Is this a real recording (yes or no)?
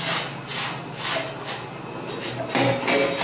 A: yes